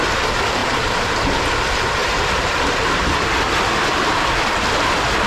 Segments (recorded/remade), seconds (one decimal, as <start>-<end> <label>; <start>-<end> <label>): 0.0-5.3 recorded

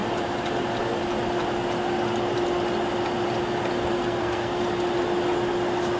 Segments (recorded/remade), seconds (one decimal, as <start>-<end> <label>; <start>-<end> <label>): 0.0-3.9 recorded; 3.9-4.6 remade; 4.6-6.0 recorded

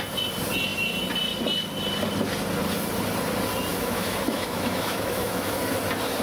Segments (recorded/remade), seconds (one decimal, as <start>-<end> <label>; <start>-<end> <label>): 0.0-3.7 recorded; 3.7-5.6 remade; 5.6-6.2 recorded

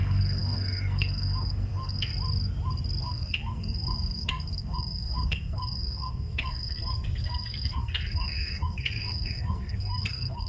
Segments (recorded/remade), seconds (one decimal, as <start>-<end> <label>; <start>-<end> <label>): 0.0-2.1 remade; 2.1-3.0 recorded; 3.0-10.5 remade

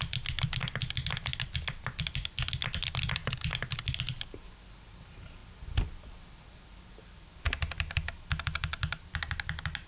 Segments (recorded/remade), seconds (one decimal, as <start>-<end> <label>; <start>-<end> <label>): 0.0-9.9 recorded

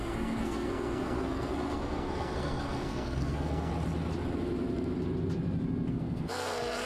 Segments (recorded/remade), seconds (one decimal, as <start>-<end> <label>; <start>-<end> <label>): 0.0-3.7 remade; 3.7-5.9 recorded; 5.9-6.9 remade

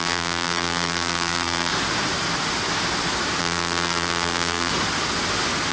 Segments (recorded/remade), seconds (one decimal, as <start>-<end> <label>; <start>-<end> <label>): 0.0-1.7 remade; 1.7-3.4 recorded; 3.4-4.7 remade; 4.7-5.7 recorded